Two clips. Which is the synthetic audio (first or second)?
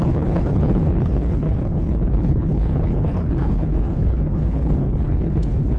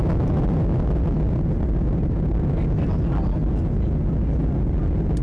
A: first